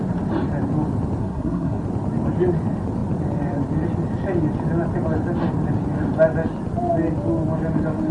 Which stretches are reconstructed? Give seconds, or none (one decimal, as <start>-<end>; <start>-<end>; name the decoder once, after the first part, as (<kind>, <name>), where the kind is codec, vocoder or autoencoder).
1.2-1.8 (codec, SNAC)